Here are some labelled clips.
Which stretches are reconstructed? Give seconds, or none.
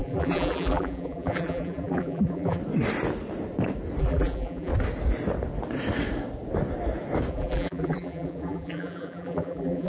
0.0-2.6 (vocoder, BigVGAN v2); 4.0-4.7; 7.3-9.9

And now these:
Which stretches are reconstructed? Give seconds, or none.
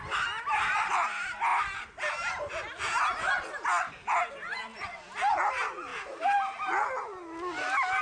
4.7-5.5 (vocoder, BigVGAN v2); 5.9-7.0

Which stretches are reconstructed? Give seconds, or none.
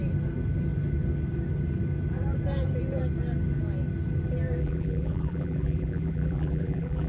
4.6-7.1 (vocoder, BigVGAN v2)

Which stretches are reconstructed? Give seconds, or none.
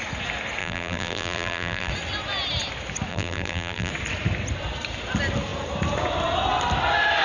0.6-1.9 (vocoder, BigVGAN v2); 3.1-3.9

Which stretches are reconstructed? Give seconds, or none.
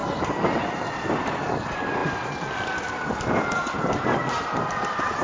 0.0-1.2 (vocoder, BigVGAN v2); 2.0-5.2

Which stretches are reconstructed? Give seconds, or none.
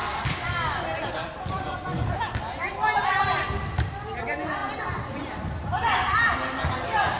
none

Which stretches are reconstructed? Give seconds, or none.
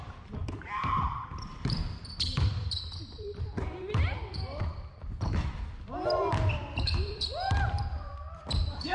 0.0-8.9 (vocoder, BigVGAN v2)